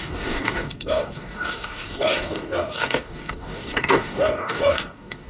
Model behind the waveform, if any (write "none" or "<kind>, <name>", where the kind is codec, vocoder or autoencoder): codec, DAC